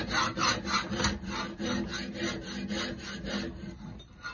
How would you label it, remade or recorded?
recorded